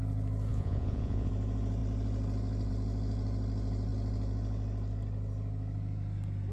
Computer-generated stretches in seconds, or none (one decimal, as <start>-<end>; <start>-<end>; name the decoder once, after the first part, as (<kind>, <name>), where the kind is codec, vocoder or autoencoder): 0.5-1.3 (vocoder, Vocos)

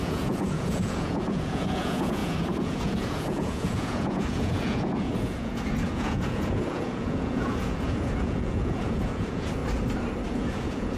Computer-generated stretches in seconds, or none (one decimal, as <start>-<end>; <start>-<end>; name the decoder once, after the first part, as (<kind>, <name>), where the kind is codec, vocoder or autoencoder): 0.0-9.6 (vocoder, Vocos); 10.3-11.0

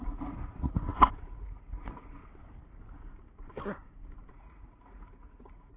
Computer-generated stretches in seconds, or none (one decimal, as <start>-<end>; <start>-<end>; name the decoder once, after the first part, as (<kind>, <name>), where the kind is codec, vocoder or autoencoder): 0.0-2.2 (vocoder, Vocos); 4.3-5.8